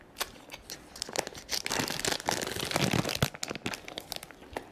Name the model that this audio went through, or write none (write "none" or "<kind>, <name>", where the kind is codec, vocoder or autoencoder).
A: none